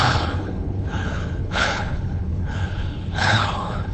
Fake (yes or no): yes